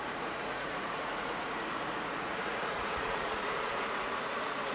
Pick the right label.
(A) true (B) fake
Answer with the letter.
B